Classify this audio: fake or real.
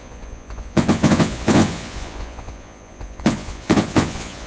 fake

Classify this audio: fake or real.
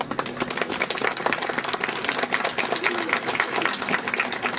real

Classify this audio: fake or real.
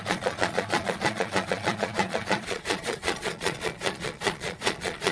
fake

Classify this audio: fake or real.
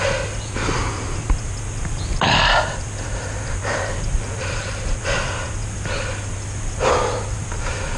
real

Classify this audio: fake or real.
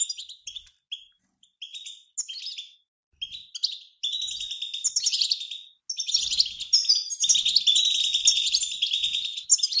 real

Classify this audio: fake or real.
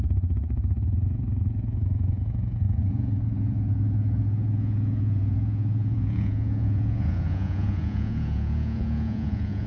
fake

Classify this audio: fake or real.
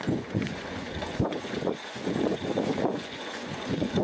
fake